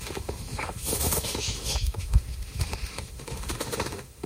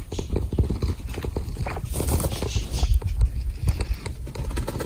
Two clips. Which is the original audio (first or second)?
second